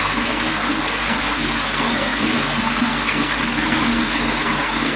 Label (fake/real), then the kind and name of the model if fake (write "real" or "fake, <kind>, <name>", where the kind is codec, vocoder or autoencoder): fake, codec, SNAC